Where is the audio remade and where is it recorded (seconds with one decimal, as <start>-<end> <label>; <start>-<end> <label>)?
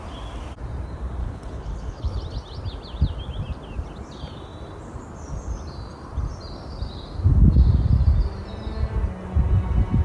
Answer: 0.0-1.2 recorded; 1.2-2.2 remade; 2.2-10.0 recorded